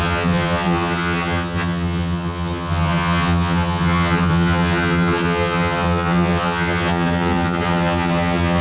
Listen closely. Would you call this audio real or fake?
fake